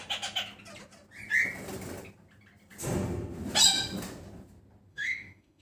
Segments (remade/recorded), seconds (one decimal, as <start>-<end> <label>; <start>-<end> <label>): 0.0-4.9 recorded; 4.9-5.6 remade